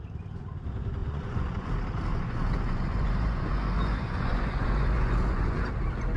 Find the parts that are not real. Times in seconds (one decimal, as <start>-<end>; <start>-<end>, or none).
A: 1.0-1.7; 2.1-5.6